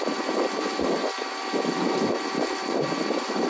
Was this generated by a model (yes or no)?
no